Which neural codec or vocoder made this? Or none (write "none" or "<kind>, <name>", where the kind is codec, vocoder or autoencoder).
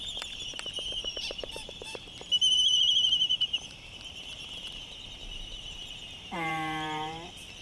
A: vocoder, BigVGAN v2